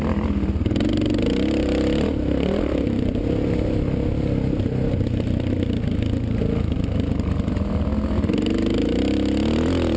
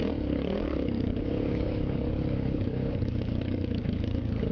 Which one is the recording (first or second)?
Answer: first